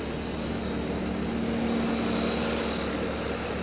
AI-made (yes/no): no